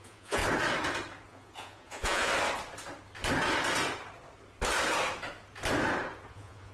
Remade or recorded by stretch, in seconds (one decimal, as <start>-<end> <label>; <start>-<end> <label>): 0.0-0.4 remade; 0.4-1.3 recorded; 1.3-2.3 remade; 2.3-6.3 recorded; 6.3-6.7 remade